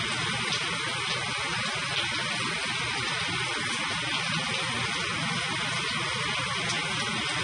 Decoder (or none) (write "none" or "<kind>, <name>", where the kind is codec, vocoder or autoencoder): none